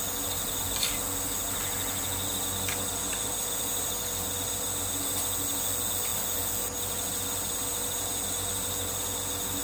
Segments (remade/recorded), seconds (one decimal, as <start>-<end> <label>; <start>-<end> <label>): 0.0-9.6 recorded